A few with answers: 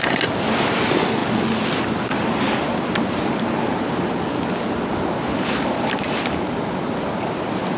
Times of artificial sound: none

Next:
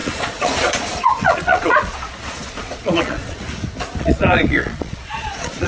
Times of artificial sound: 0.0-3.4 (vocoder, Vocos); 4.0-5.7

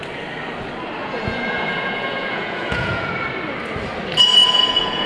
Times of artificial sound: 1.0-3.1 (vocoder, Vocos); 4.4-5.1

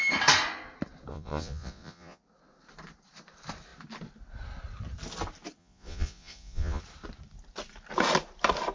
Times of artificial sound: 1.1-2.2 (vocoder, Vocos); 5.6-6.8